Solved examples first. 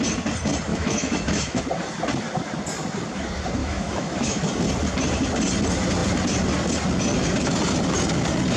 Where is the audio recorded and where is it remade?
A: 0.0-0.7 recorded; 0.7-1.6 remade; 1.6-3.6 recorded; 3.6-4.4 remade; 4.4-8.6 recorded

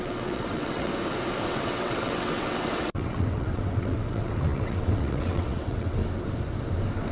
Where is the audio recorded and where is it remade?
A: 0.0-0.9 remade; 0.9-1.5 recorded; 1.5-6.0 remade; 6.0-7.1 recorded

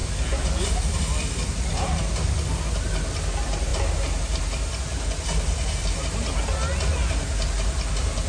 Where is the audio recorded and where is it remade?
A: 0.0-8.3 recorded

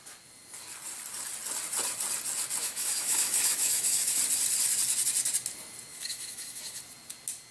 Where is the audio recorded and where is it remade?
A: 0.0-2.6 recorded; 2.6-4.2 remade; 4.2-5.9 recorded; 5.9-6.8 remade; 6.8-7.5 recorded

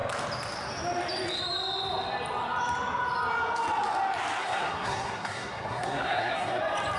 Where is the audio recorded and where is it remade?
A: 0.0-4.4 recorded; 4.4-6.6 remade; 6.6-7.0 recorded

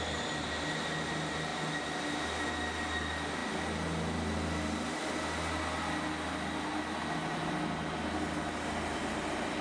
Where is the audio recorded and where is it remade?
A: 0.0-9.6 recorded

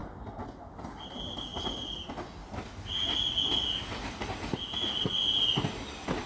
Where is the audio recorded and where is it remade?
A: 0.0-6.3 recorded